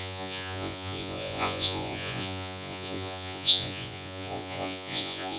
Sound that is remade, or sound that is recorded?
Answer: remade